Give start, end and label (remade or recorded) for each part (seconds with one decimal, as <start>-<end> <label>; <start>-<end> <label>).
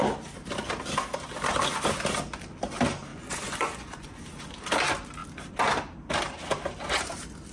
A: 0.0-3.1 recorded; 3.1-4.2 remade; 4.2-7.5 recorded